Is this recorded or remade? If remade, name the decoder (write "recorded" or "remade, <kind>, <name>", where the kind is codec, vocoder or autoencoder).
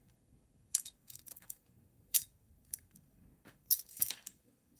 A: remade, codec, SNAC